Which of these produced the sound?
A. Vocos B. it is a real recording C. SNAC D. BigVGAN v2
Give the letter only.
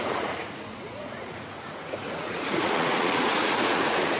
A